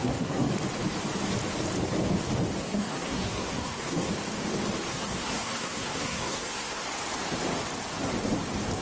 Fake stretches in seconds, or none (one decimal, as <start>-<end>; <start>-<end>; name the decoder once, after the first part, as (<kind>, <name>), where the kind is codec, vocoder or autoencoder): 0.0-0.5 (codec, SNAC); 2.6-4.1; 4.9-6.8